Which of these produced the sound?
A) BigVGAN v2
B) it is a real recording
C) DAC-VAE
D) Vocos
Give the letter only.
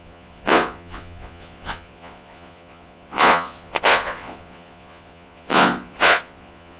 D